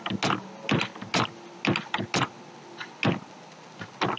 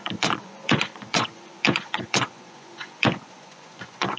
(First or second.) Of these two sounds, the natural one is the first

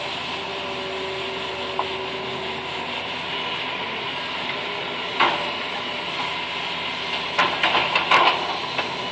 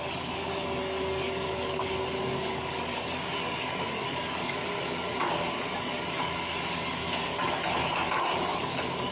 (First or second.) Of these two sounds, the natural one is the first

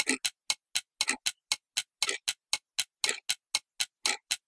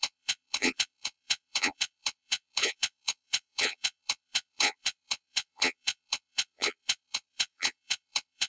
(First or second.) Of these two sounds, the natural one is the first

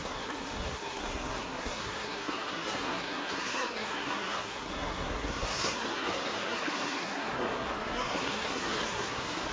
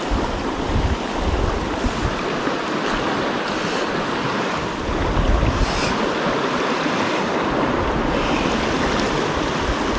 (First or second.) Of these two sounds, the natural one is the second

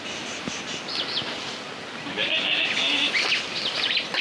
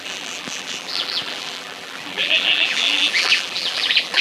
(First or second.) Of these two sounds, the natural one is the first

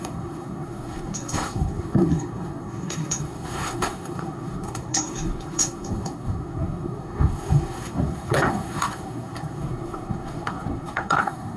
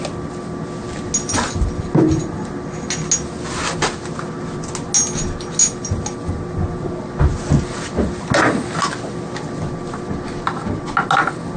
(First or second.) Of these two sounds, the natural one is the second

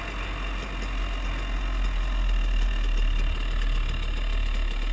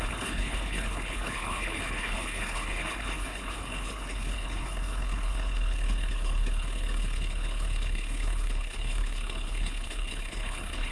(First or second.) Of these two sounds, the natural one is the first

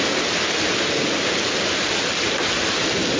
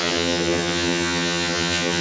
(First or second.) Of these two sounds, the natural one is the first